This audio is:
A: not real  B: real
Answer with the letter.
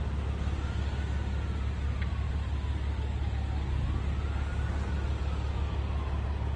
B